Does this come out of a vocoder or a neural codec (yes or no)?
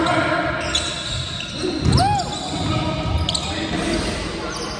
no